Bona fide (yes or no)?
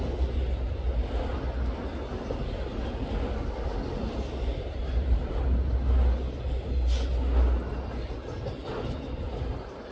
yes